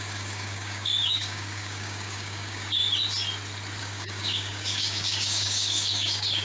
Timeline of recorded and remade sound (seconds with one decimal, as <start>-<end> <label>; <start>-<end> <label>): 0.0-2.8 remade; 2.8-3.8 recorded; 3.8-6.4 remade